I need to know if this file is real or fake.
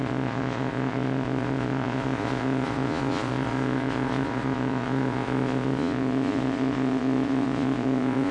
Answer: fake